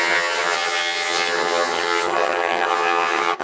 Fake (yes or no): yes